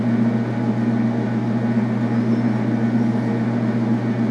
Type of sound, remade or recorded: recorded